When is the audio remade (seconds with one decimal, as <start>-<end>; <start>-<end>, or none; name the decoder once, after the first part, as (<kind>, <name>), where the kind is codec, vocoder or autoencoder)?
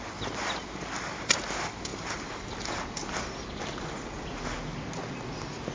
1.9-2.7 (vocoder, BigVGAN v2)